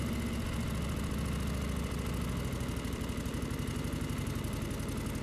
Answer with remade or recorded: recorded